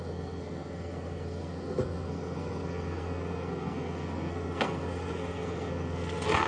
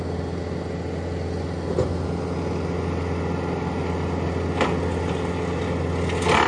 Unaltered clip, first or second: second